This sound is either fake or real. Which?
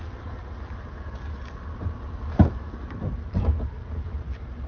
fake